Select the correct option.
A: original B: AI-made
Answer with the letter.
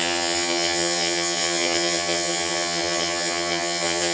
B